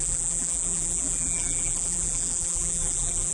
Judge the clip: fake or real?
fake